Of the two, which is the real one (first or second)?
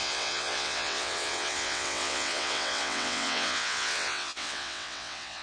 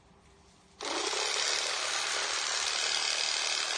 second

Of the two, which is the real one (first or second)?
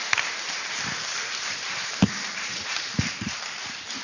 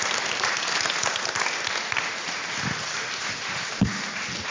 second